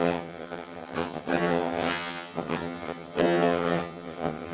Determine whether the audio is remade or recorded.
remade